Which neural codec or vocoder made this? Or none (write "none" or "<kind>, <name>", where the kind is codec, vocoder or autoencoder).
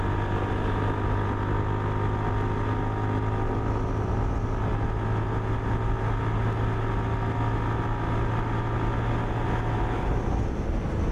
none